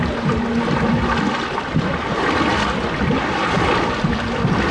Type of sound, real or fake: real